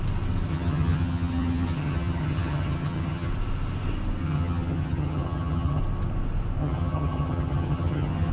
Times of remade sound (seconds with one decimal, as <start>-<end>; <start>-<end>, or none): 0.5-3.3; 4.2-5.8; 6.6-8.3